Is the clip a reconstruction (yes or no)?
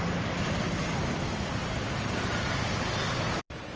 no